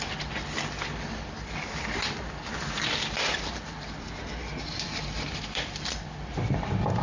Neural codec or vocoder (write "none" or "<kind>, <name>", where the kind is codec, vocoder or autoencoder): vocoder, BigVGAN v2